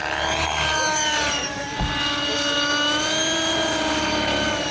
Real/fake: fake